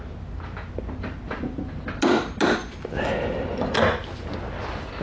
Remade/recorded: recorded